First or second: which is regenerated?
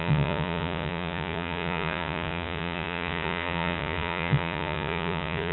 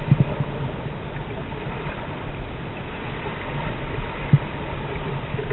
first